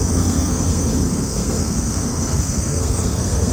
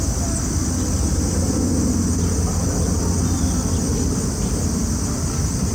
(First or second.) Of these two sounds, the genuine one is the second